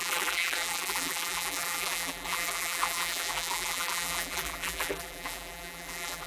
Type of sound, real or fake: fake